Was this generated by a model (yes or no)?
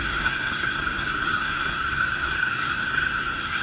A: yes